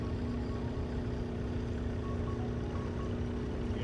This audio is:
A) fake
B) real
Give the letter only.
B